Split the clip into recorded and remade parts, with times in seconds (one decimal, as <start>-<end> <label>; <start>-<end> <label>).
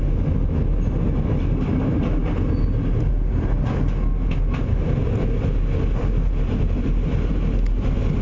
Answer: 0.0-8.2 recorded